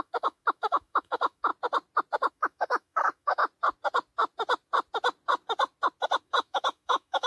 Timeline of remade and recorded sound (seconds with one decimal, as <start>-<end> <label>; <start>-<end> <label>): 0.0-1.5 remade; 1.5-2.3 recorded; 2.3-3.4 remade; 3.4-6.2 recorded; 6.2-7.3 remade